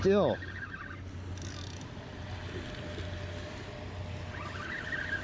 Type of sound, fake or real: real